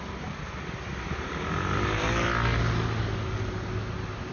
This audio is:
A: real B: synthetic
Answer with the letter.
A